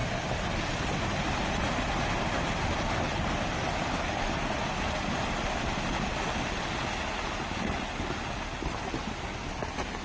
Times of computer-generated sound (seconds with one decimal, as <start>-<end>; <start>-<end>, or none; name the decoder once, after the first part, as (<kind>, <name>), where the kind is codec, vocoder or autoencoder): none